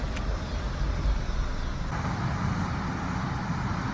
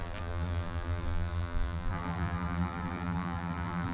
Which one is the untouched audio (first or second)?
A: first